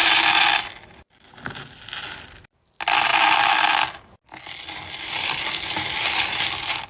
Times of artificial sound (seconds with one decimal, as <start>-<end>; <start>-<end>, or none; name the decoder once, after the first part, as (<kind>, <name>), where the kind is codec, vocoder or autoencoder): none